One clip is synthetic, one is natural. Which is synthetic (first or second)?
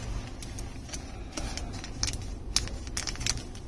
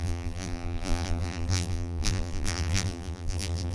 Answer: second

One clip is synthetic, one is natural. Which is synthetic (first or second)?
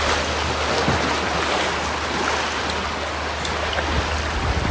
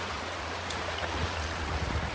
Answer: second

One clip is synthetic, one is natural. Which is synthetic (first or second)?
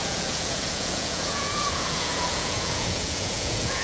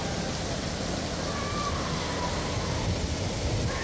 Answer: first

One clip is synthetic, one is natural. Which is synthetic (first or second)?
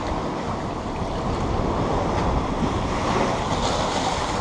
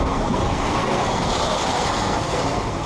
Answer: second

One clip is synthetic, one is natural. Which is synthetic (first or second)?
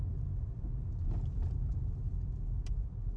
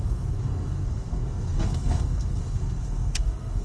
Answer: second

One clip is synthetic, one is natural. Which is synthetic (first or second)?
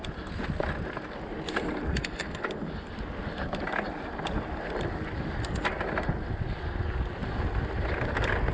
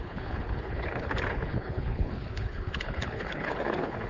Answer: second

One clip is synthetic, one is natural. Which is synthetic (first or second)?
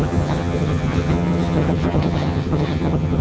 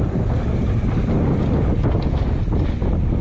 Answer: first